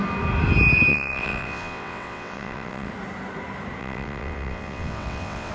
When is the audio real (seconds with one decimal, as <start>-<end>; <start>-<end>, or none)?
0.0-0.9; 2.9-3.8